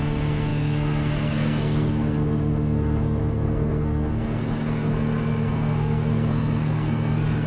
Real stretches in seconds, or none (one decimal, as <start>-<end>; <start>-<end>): none